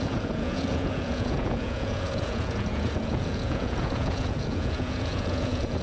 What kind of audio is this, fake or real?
fake